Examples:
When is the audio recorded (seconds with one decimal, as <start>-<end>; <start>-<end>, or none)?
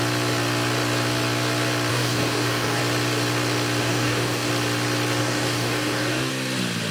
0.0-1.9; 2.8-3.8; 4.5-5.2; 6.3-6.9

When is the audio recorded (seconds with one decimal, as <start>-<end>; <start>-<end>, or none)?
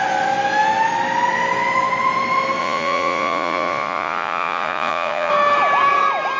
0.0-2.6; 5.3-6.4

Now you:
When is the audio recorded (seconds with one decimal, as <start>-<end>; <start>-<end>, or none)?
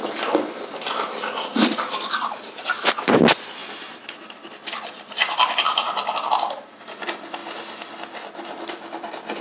0.0-9.4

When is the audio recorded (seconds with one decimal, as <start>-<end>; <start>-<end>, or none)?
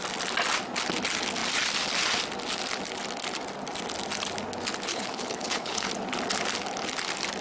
0.0-4.9; 5.9-7.4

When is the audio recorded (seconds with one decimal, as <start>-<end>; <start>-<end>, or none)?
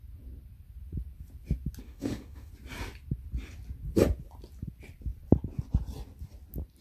0.0-1.8; 2.5-6.8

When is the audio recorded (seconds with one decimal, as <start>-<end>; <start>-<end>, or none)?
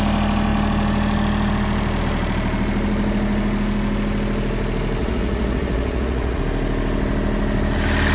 0.0-5.0; 6.4-8.1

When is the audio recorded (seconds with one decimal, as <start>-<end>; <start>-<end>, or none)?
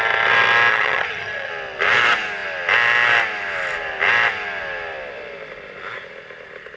0.0-0.7; 1.5-6.8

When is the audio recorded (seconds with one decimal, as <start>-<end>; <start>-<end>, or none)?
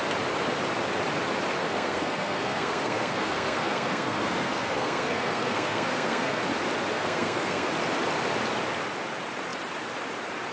0.0-1.6; 6.4-6.9; 7.7-10.5